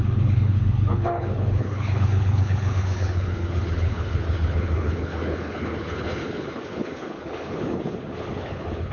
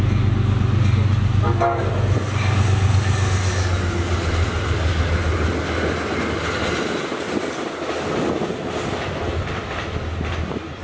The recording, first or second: second